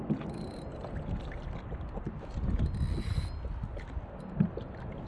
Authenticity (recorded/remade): recorded